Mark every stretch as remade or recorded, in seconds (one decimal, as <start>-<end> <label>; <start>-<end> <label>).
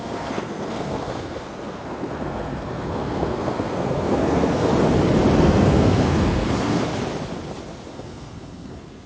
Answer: 0.0-4.7 remade; 4.7-5.4 recorded; 5.4-6.9 remade; 6.9-7.9 recorded; 7.9-9.1 remade